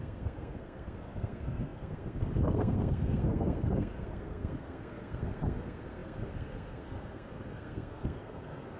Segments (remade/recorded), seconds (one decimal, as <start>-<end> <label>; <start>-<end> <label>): 0.0-8.8 remade